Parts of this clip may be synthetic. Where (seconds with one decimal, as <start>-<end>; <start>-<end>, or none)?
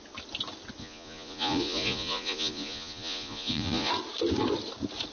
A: 0.8-3.9